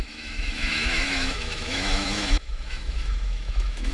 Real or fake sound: fake